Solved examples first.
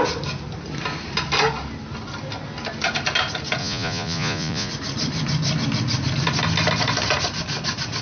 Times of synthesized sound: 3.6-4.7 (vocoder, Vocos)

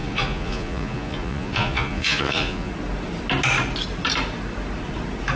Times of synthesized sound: 0.0-2.7 (vocoder, Vocos)

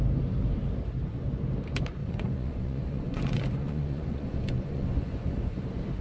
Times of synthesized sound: 2.0-5.6 (vocoder, Vocos)

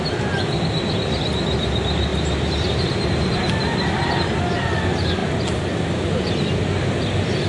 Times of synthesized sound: none

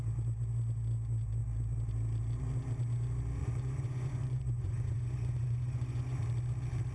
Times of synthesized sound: 3.4-6.2 (vocoder, Vocos)

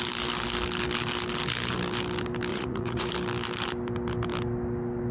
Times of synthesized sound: 2.5-3.1 (vocoder, Vocos)

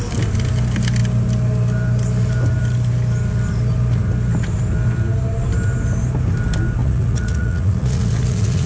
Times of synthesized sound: 6.8-8.7 (vocoder, Vocos)

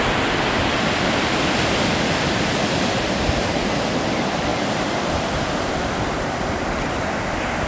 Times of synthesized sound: none